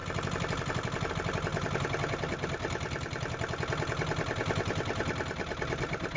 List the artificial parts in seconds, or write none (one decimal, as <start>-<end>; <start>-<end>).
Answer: none